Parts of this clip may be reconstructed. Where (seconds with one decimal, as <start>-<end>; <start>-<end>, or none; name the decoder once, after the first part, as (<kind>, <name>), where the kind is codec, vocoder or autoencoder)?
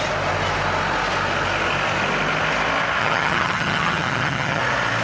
3.0-4.6 (vocoder, HiFi-GAN)